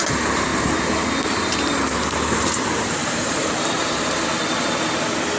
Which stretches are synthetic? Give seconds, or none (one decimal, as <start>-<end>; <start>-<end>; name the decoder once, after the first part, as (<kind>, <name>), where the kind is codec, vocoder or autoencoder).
0.0-0.5 (vocoder, BigVGAN v2); 2.3-4.3